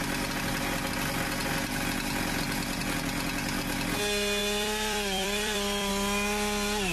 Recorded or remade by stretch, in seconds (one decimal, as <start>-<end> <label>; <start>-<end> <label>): 0.0-4.4 recorded; 4.4-5.9 remade; 5.9-6.9 recorded